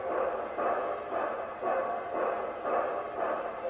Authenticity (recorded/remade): recorded